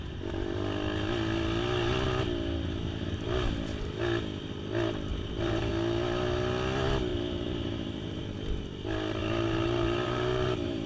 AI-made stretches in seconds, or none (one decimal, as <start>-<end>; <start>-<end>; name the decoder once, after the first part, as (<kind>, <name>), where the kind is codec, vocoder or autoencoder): 5.1-5.7 (vocoder, BigVGAN v2); 7.1-8.2; 9.2-10.9